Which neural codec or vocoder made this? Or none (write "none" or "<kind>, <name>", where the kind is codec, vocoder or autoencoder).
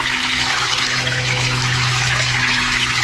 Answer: autoencoder, DAC-VAE